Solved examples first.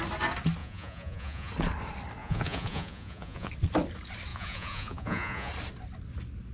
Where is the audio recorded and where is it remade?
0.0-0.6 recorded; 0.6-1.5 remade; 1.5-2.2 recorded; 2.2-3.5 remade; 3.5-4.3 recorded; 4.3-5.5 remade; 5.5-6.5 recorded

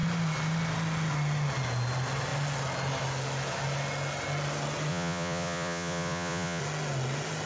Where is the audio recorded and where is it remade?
0.0-4.9 recorded; 4.9-6.6 remade; 6.6-7.5 recorded

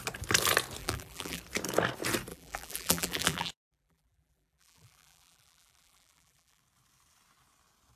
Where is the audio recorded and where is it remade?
0.0-0.8 recorded; 0.8-1.4 remade; 1.4-2.3 recorded; 2.3-6.6 remade; 6.6-8.0 recorded

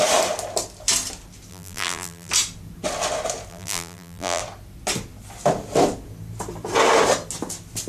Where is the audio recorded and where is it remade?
0.0-1.5 recorded; 1.5-2.3 remade; 2.3-3.5 recorded; 3.5-4.4 remade; 4.4-7.9 recorded

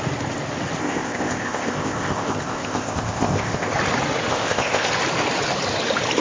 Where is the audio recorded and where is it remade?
0.0-0.8 recorded; 0.8-3.7 remade; 3.7-4.3 recorded; 4.3-4.9 remade; 4.9-6.2 recorded

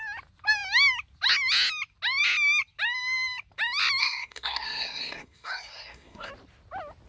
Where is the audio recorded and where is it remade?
0.0-4.0 recorded; 4.0-6.3 remade; 6.3-7.1 recorded

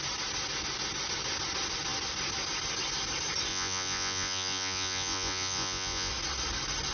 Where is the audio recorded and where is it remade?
0.0-3.5 recorded; 3.5-6.1 remade; 6.1-6.9 recorded

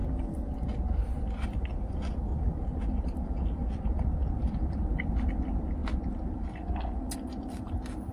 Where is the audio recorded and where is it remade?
0.0-1.0 recorded; 1.0-2.3 remade; 2.3-4.3 recorded; 4.3-5.8 remade; 5.8-7.4 recorded; 7.4-8.1 remade